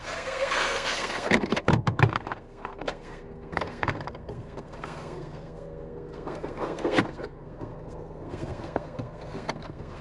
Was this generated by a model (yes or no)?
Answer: yes